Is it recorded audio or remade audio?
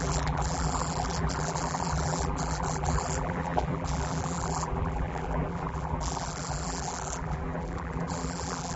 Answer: remade